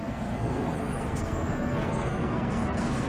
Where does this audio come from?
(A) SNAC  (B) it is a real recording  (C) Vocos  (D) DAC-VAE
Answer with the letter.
A